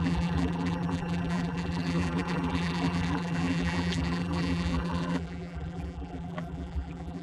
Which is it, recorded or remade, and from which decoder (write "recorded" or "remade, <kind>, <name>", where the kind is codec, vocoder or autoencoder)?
remade, vocoder, BigVGAN v2